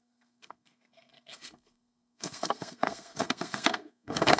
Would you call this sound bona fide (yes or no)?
no